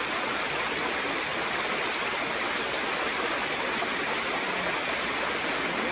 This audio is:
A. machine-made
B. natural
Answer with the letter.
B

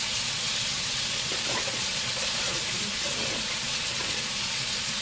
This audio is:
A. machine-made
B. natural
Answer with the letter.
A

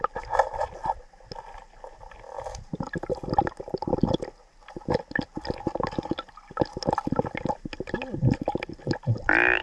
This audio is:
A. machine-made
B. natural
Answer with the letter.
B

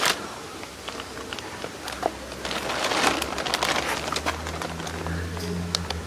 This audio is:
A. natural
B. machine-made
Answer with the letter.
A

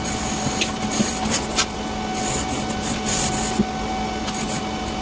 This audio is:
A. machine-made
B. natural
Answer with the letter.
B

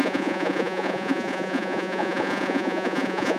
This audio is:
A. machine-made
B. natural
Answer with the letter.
A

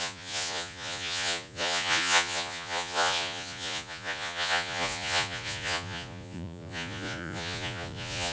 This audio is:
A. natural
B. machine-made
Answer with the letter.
B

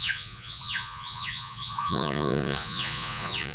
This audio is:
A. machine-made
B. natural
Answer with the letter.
A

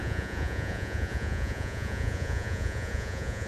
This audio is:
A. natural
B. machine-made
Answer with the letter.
B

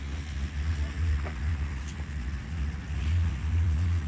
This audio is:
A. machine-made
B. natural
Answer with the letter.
A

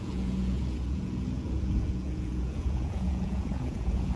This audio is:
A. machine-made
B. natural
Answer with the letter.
A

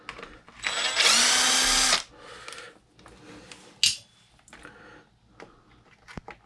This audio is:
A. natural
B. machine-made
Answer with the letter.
A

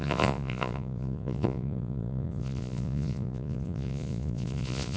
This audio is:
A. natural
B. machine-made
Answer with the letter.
B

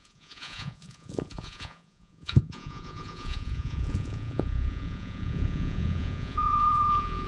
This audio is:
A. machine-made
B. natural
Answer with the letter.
A